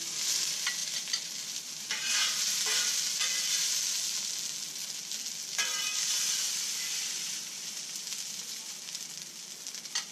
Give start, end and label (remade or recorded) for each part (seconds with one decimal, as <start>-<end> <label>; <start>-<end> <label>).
0.0-0.8 recorded; 0.8-2.0 remade; 2.0-5.9 recorded; 5.9-8.1 remade; 8.1-10.1 recorded